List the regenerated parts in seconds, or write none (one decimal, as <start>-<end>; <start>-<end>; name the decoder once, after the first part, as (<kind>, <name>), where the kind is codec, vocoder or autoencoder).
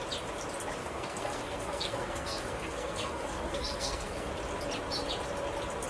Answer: 0.8-4.3 (codec, SNAC)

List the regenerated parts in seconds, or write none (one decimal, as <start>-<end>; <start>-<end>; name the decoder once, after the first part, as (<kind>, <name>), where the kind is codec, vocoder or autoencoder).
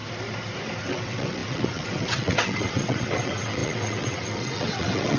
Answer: 0.8-5.2 (vocoder, WaveNeXt)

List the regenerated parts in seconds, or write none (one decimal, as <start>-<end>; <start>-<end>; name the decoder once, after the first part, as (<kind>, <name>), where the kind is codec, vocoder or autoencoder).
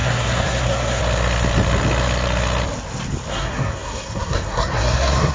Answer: 0.0-1.0 (codec, SNAC); 3.3-5.3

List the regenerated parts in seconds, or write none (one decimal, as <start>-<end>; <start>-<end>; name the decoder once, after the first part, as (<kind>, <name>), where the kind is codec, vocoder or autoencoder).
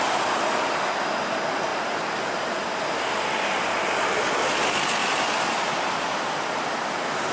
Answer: 1.7-2.6 (vocoder, BigVGAN v2); 5.0-6.2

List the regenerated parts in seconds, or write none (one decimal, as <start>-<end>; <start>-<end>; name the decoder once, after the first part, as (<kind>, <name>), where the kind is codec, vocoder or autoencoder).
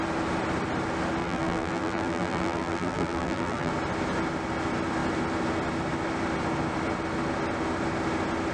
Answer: 1.2-3.7 (vocoder, BigVGAN v2)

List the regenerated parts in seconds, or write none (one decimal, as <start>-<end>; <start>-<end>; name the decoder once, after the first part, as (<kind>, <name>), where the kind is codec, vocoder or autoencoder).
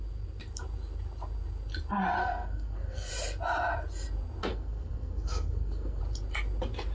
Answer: 2.2-3.1 (codec, SNAC); 4.5-6.0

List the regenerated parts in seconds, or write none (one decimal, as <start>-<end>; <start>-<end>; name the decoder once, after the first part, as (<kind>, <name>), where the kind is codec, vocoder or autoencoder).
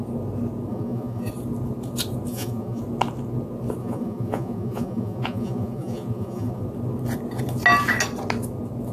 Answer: 0.7-1.3 (vocoder, Vocos); 2.3-2.8; 3.8-6.6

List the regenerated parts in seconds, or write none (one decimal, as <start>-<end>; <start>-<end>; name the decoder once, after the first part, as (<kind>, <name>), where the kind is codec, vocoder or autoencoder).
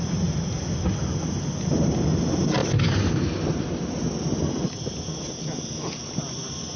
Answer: none